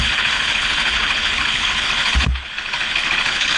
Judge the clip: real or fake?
fake